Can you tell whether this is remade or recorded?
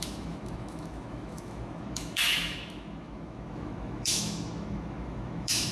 remade